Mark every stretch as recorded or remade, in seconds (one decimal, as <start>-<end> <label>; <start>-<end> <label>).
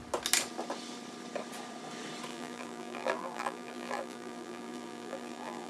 0.0-2.3 recorded; 2.3-5.7 remade